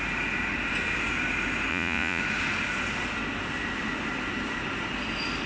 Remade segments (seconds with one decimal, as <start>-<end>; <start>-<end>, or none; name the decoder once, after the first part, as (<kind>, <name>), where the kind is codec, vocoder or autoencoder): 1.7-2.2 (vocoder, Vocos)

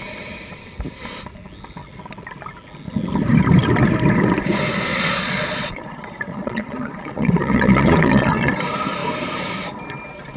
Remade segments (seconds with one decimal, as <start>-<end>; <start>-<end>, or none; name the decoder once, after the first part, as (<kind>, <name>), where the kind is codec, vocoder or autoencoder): 4.9-8.5 (vocoder, Vocos)

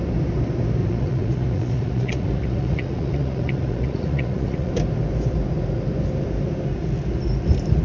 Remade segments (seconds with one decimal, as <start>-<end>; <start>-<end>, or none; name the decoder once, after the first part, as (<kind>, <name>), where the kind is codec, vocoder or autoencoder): 0.8-4.7 (vocoder, Vocos)

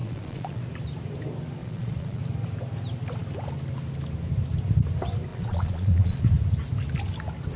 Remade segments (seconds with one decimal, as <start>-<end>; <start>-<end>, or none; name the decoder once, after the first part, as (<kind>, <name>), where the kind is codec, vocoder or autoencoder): 0.0-0.6 (vocoder, Vocos); 1.6-2.2; 5.3-6.2

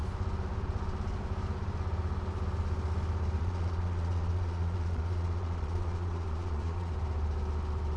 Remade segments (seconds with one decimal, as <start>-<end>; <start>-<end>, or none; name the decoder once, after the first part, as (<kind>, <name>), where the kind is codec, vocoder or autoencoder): 3.4-6.9 (vocoder, Vocos)